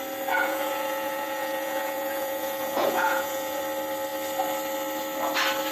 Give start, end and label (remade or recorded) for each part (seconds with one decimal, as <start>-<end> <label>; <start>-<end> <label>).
0.0-0.4 recorded; 0.4-3.6 remade; 3.6-5.7 recorded